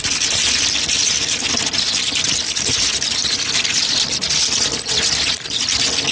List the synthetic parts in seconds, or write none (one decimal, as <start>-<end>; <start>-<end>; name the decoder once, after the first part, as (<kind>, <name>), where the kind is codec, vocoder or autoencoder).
none